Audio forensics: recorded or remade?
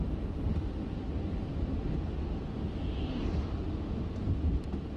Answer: recorded